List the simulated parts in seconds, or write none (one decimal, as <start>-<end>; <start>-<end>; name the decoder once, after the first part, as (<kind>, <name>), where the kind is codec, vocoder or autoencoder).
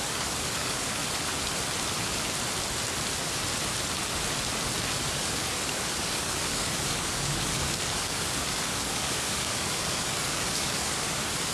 0.0-1.0 (codec, DAC); 4.8-11.5